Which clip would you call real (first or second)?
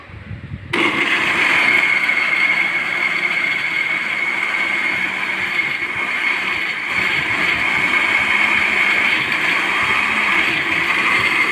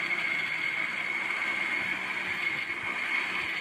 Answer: second